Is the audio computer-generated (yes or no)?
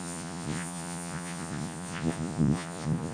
yes